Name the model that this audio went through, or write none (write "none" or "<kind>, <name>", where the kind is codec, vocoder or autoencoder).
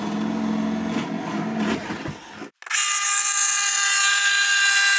none